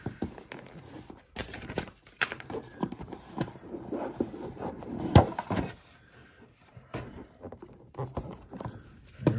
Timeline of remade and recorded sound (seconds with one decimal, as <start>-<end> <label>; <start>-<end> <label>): 0.0-1.4 recorded; 1.4-5.7 remade; 5.7-6.2 recorded; 6.2-8.7 remade; 8.7-9.4 recorded